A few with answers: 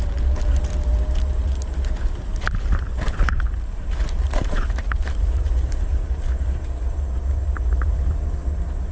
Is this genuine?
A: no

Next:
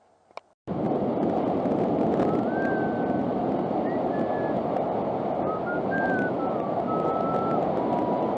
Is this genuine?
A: yes